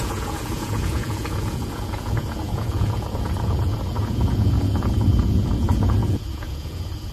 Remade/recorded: remade